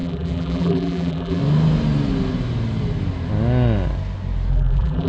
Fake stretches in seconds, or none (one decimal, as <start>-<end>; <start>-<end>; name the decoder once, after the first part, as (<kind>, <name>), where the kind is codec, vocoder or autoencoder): 0.0-1.4 (vocoder, BigVGAN v2); 4.5-5.1

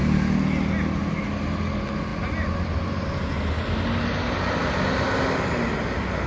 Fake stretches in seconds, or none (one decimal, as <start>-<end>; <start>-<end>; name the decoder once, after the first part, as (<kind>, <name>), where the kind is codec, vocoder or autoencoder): none

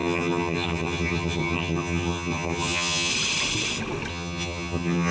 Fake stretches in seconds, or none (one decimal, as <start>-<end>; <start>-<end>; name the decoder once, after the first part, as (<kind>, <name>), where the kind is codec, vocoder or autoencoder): 0.0-3.1 (vocoder, HiFi-GAN); 4.1-5.1